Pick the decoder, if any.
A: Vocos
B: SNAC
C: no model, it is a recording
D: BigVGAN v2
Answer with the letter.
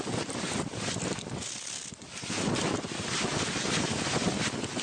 C